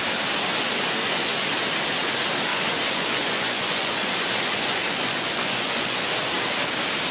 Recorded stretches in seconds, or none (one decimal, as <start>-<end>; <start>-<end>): 0.0-1.0; 1.5-2.5; 6.1-7.1